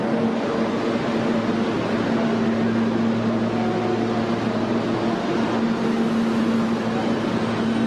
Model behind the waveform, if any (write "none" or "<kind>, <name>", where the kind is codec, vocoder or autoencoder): none